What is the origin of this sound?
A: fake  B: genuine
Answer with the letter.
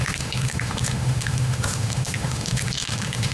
A